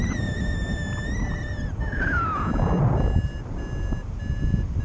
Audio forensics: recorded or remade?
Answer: recorded